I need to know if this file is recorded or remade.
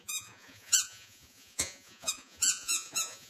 remade